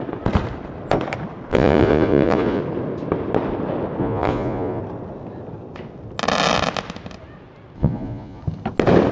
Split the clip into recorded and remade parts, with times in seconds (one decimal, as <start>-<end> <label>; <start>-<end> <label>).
0.0-1.5 recorded; 1.5-2.6 remade; 2.6-4.0 recorded; 4.0-4.8 remade; 4.8-7.8 recorded; 7.8-8.4 remade; 8.4-9.1 recorded